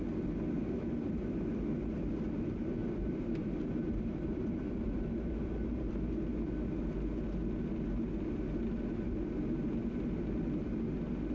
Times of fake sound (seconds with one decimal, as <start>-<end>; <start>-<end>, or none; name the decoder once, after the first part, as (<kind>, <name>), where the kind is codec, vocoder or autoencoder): 2.8-5.9 (vocoder, BigVGAN v2)